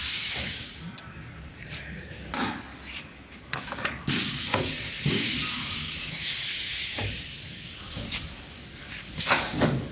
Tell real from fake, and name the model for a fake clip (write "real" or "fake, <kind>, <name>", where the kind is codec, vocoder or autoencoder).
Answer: fake, codec, DAC